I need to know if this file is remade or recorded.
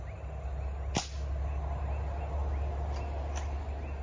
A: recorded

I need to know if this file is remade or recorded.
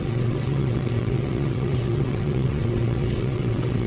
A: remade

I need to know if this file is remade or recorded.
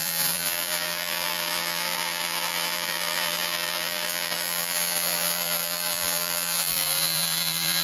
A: remade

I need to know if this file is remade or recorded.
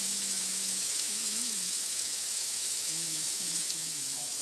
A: remade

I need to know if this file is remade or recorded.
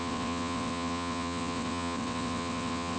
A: remade